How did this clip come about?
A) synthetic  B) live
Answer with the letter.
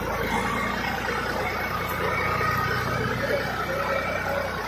B